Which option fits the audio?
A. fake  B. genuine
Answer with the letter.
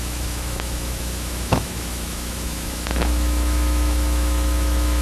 A